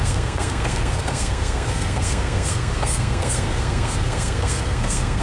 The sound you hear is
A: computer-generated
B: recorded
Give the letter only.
A